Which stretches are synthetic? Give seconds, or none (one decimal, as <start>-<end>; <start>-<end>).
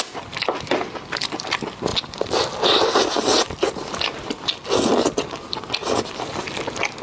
none